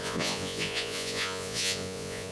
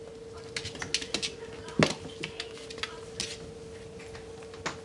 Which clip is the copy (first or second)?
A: first